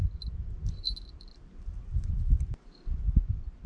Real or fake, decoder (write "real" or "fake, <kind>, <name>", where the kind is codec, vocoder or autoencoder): real